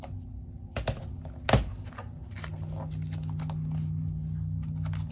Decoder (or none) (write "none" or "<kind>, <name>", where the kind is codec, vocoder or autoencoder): none